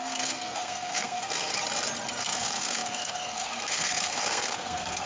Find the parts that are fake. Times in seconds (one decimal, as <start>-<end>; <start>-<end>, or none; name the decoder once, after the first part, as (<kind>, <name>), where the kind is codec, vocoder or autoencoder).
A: 0.0-1.5 (codec, SNAC); 2.2-5.1